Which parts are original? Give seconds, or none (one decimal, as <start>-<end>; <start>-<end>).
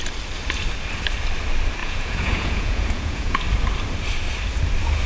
0.0-1.8; 3.4-5.1